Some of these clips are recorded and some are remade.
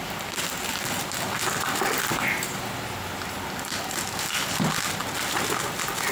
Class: recorded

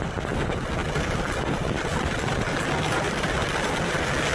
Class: recorded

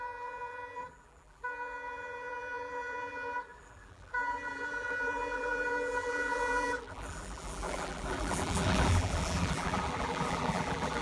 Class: remade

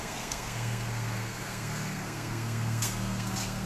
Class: remade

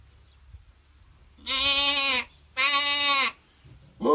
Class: recorded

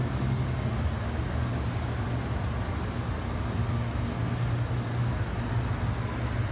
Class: recorded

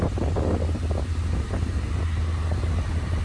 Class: recorded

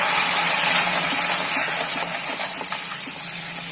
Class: recorded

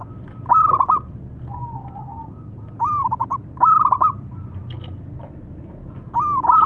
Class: recorded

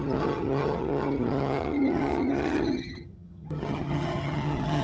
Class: remade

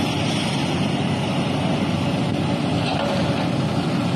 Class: recorded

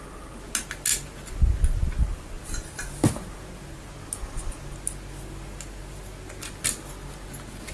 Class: recorded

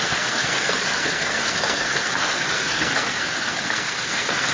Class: remade